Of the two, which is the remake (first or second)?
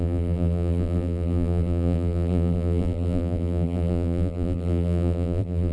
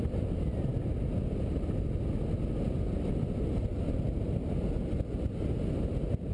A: first